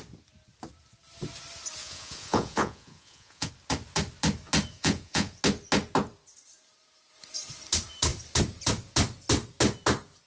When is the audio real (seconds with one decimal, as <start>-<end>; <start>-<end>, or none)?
0.0-1.8; 3.5-4.7; 5.4-10.3